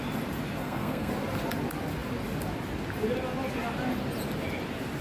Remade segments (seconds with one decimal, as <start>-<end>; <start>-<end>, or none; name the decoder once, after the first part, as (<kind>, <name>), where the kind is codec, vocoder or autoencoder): 0.6-1.1 (codec, SNAC)